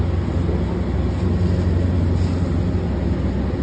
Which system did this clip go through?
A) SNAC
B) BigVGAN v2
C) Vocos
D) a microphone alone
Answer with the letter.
D